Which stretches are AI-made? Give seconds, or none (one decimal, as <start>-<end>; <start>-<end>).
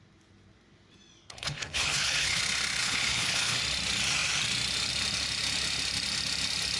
1.2-2.4; 2.8-3.6